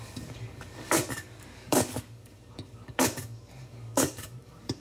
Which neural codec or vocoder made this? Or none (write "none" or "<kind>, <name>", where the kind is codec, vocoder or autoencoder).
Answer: codec, DAC